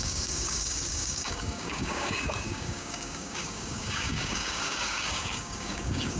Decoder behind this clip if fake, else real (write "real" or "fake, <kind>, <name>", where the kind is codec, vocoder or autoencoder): fake, codec, DAC